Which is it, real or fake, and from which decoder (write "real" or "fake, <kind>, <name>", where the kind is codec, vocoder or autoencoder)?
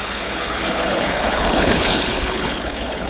fake, codec, HILCodec